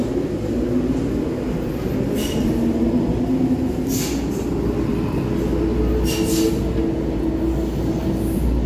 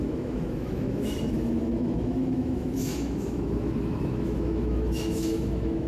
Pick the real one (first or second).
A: first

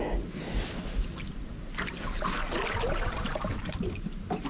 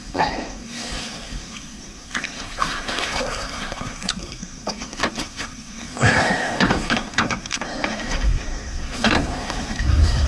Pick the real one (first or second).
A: first